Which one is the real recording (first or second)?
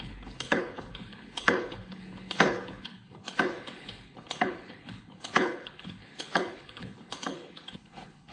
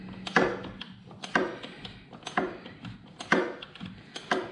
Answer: second